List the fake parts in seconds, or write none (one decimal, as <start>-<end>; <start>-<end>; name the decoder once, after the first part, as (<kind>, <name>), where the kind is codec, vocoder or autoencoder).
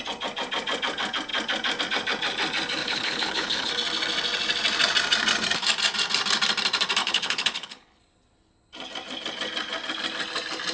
2.8-3.7 (codec, HILCodec); 7.0-8.0